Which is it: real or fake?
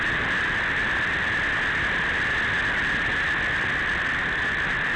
real